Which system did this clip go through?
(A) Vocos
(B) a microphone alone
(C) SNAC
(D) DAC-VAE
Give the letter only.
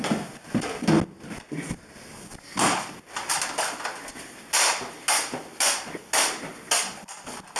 B